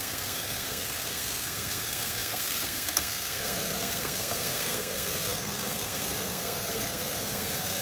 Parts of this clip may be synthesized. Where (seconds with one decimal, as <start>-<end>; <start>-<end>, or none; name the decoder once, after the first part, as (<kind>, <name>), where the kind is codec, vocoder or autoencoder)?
0.0-7.8 (codec, SNAC)